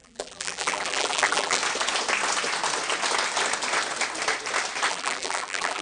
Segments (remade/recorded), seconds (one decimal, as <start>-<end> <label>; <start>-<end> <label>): 0.0-1.6 remade; 1.6-4.9 recorded; 4.9-5.8 remade